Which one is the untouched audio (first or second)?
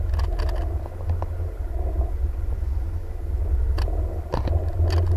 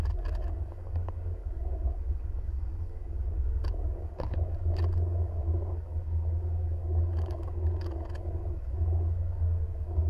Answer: first